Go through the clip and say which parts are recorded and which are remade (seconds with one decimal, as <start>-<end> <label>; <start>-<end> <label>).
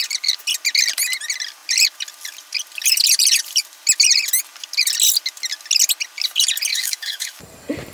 0.0-6.7 recorded; 6.7-7.4 remade; 7.4-7.9 recorded